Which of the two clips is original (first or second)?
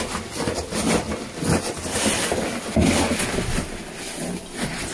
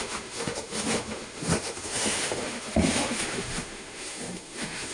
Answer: first